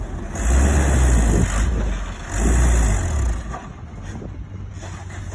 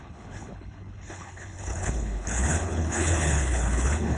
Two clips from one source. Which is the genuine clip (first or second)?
first